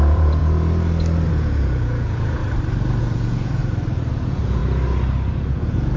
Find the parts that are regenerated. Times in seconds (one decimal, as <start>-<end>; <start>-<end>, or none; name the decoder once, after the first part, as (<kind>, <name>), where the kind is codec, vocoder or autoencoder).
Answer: 0.0-0.4 (vocoder, Vocos); 1.3-2.4; 3.0-3.6; 4.1-4.6; 5.3-6.0